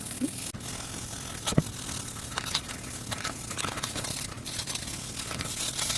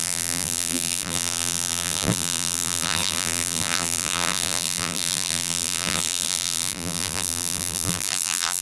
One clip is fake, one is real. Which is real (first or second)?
first